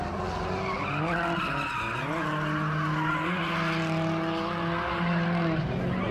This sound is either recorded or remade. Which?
recorded